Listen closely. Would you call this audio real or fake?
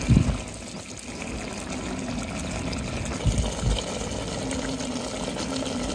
real